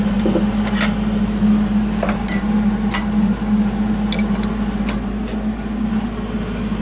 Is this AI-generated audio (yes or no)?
no